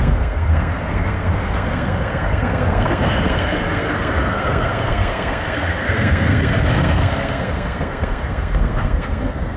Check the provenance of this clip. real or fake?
fake